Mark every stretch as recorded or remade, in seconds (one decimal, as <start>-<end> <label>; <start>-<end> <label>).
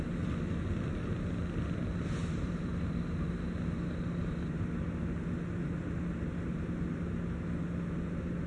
0.0-2.2 recorded; 2.2-2.9 remade; 2.9-8.5 recorded